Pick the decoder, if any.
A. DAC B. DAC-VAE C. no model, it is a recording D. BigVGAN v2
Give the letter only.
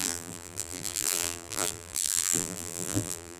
D